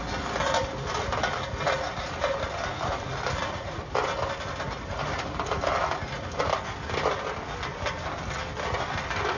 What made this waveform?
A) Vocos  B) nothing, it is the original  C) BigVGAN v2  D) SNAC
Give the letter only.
B